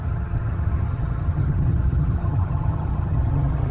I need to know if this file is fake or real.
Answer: fake